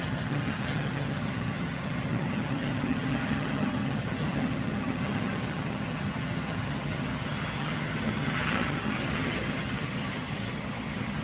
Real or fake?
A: fake